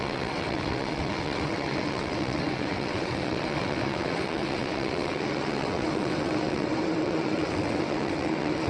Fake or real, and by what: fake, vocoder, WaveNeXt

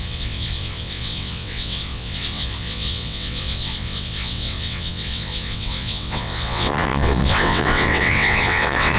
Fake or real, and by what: fake, vocoder, WaveNeXt